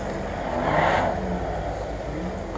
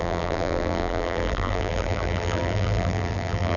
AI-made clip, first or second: second